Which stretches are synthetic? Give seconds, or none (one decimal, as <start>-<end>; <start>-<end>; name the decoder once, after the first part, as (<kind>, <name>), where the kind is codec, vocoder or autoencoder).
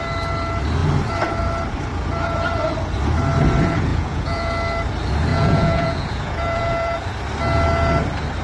3.9-4.5 (vocoder, Vocos); 5.3-7.0